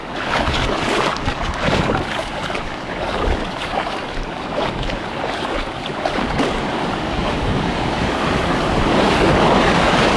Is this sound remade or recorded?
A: remade